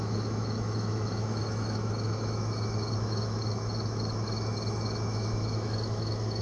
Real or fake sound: fake